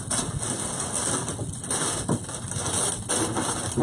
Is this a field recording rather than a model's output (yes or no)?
yes